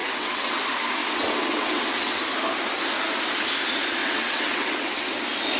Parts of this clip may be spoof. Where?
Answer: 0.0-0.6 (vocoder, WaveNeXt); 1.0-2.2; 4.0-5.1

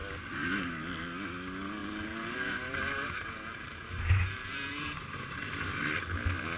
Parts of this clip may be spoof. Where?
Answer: 1.8-5.8 (vocoder, BigVGAN v2)

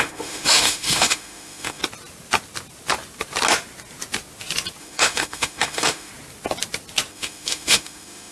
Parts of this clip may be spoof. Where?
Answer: 0.0-1.8 (autoencoder, DAC-VAE); 4.8-6.1; 7.1-8.3

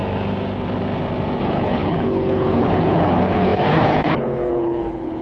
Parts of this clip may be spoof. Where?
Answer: 1.4-5.2 (codec, HILCodec)

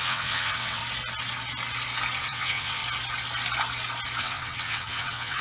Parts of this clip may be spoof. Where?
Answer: 0.0-0.8 (vocoder, WaveNeXt); 2.2-2.8; 4.2-5.4

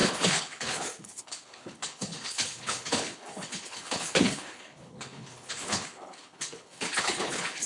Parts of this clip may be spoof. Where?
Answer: 0.0-7.7 (codec, HILCodec)